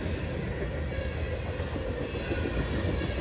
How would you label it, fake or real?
real